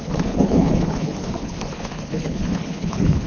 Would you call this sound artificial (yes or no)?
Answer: yes